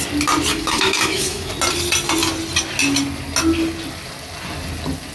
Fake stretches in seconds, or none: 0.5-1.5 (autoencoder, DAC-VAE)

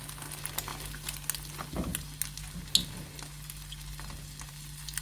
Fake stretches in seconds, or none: none

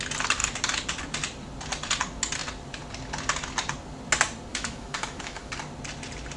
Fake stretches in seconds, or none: 4.5-5.5 (autoencoder, DAC-VAE)

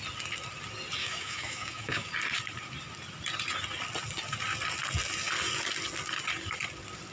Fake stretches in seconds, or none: 1.0-2.1 (autoencoder, DAC-VAE)

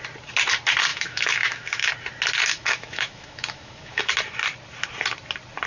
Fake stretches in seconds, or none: 0.9-1.9 (autoencoder, DAC-VAE); 2.5-4.1

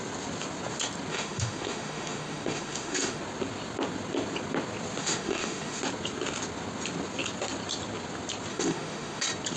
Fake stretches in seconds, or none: 1.1-3.2 (autoencoder, DAC-VAE); 5.0-5.8; 8.5-9.2